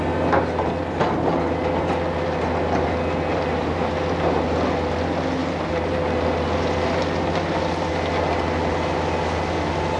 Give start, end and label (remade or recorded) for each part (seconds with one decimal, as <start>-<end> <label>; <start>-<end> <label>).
0.0-10.0 recorded